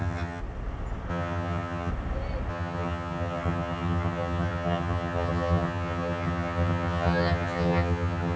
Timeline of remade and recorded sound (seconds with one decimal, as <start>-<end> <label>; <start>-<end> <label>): 0.0-0.4 remade; 0.4-1.1 recorded; 1.1-1.9 remade; 1.9-2.5 recorded; 2.5-8.4 remade